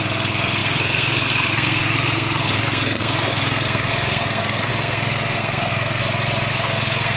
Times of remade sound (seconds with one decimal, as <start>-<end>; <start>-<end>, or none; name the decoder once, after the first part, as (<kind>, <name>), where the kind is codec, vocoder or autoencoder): 0.0-6.0 (codec, SNAC); 6.5-7.2